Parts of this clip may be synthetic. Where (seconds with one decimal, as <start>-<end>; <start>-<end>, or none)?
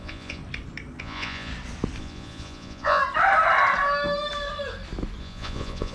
0.0-0.4; 1.0-1.5; 2.0-3.0; 5.2-5.9